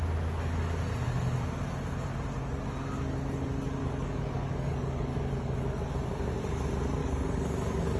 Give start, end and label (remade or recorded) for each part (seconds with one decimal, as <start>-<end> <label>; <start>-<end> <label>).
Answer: 0.0-3.8 recorded; 3.8-5.9 remade; 5.9-7.0 recorded; 7.0-8.0 remade